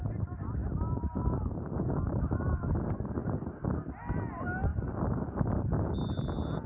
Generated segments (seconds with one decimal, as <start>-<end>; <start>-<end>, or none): none